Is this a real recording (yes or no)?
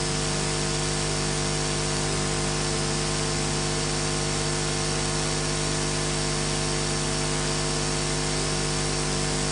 yes